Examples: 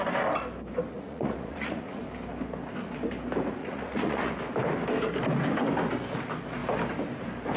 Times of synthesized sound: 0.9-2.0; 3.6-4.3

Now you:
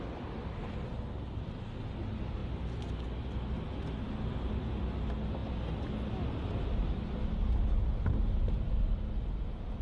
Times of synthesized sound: none